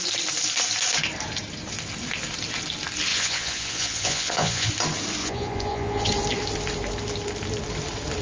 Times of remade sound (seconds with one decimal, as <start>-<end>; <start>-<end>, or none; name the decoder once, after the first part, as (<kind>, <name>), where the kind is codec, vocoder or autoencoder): 3.1-4.7 (vocoder, Vocos); 5.2-6.1

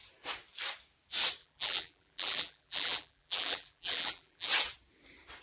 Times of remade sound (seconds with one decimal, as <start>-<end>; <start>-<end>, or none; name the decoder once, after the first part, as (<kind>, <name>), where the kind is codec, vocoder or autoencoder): 1.4-4.5 (vocoder, BigVGAN v2)

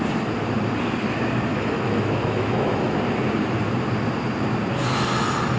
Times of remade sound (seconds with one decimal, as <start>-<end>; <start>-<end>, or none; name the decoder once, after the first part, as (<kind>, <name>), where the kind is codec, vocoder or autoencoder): 1.5-3.0 (autoencoder, DAC-VAE)

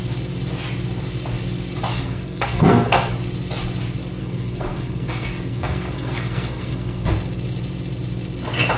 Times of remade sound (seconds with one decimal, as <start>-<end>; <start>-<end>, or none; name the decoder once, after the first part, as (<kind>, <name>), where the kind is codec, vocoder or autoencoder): 1.9-3.1 (codec, SNAC); 4.2-7.1

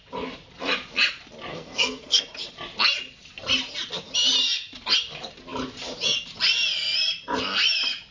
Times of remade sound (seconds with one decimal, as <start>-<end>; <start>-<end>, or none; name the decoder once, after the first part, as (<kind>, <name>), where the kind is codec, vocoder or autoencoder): 1.5-2.2 (codec, SNAC)

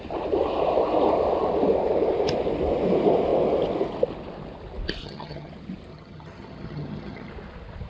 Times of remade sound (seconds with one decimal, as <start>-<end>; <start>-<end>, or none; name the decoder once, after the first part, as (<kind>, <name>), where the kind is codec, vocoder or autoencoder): 5.0-5.5 (vocoder, HiFi-GAN); 5.9-7.3